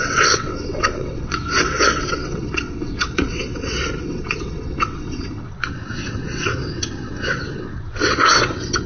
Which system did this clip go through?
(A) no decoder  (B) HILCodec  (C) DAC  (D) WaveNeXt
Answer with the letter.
D